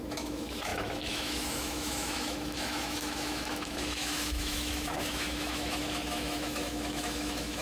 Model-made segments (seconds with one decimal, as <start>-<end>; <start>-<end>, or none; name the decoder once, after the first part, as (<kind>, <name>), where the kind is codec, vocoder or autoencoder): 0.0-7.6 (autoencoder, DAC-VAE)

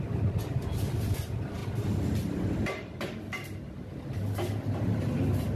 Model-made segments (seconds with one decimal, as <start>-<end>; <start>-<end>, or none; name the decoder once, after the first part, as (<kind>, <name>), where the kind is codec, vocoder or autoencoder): none

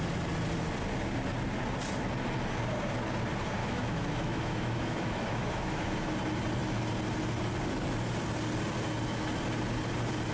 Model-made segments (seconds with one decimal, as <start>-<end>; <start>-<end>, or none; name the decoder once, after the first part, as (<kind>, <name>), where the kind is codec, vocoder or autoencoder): 3.6-6.1 (autoencoder, DAC-VAE)

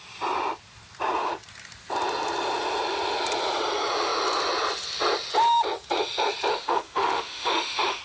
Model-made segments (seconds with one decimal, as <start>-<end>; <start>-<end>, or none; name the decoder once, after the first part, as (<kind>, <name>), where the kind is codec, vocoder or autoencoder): 6.5-8.0 (autoencoder, DAC-VAE)